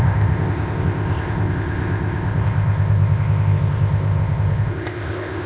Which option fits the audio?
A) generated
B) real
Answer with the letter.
A